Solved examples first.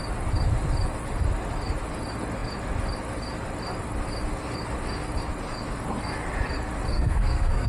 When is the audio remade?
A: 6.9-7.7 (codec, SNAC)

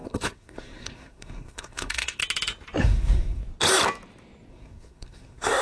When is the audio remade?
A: 0.0-2.2 (codec, SNAC); 2.8-3.4; 4.5-5.6

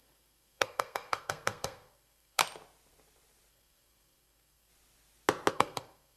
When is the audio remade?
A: 0.0-2.4 (codec, SNAC); 3.5-4.7; 5.5-6.2

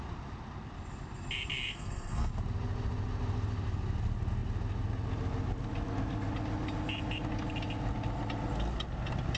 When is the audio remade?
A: 1.7-2.3 (codec, SNAC)

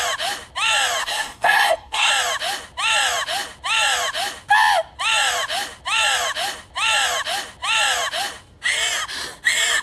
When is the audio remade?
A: 1.0-2.1 (codec, SNAC)

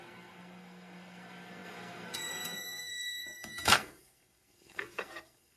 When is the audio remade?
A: 0.0-5.6 (codec, SNAC)